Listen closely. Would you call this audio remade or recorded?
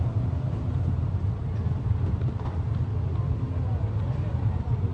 recorded